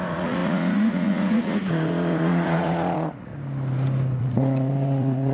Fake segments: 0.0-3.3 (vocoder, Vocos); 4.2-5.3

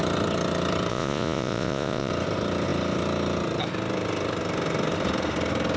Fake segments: 0.9-2.1 (vocoder, Vocos)

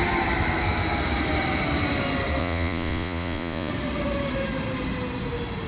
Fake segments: 2.4-3.7 (vocoder, Vocos)